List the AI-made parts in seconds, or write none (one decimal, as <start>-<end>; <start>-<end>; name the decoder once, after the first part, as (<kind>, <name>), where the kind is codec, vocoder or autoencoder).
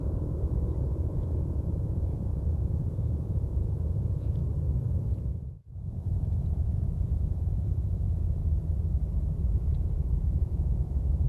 0.0-4.4 (vocoder, Vocos); 5.1-8.4; 9.5-11.3